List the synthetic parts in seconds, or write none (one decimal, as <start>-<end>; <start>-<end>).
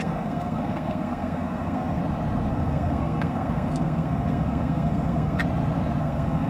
0.0-2.0; 2.5-5.4; 6.0-6.5